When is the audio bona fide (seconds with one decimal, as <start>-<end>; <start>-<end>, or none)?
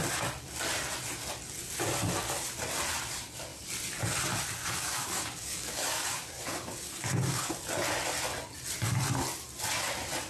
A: 0.0-4.6; 7.5-10.3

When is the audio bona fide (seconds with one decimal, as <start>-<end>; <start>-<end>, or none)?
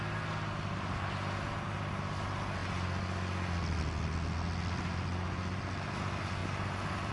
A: 0.0-7.1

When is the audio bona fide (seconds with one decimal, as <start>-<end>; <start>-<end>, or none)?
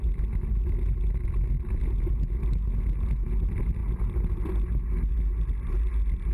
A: 0.0-6.3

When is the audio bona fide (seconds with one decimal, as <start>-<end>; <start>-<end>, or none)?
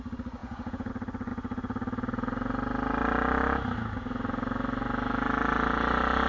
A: 0.0-0.4; 0.9-6.3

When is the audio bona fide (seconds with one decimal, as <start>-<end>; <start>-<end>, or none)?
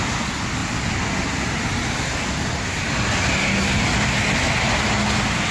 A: 0.0-0.6; 3.1-5.5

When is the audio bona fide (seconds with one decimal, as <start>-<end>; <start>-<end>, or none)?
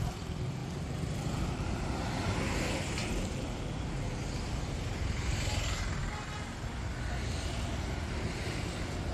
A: 0.0-0.6; 2.0-3.0; 3.7-9.1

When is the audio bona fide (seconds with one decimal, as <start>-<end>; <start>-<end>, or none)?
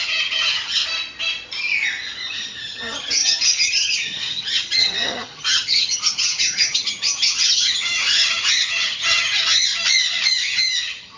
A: 0.8-2.3; 9.7-10.3